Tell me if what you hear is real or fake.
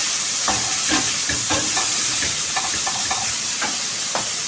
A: real